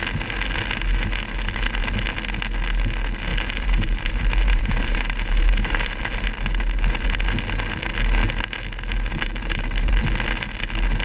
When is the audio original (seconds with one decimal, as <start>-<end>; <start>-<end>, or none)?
0.0-3.3; 6.0-9.1; 10.0-11.0